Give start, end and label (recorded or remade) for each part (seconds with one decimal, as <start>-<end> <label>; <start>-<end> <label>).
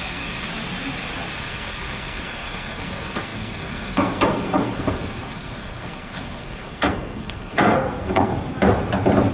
0.0-0.5 remade; 0.5-1.3 recorded; 1.3-8.3 remade; 8.3-9.3 recorded